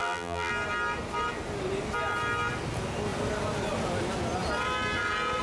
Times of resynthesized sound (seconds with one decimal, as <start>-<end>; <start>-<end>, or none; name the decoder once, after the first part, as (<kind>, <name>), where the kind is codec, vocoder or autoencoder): 0.0-0.5 (vocoder, BigVGAN v2)